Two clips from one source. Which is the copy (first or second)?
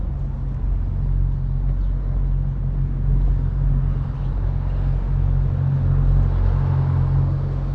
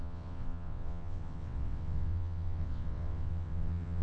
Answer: second